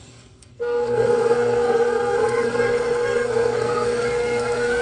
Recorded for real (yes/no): no